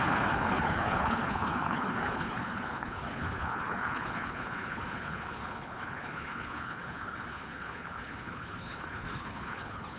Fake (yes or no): yes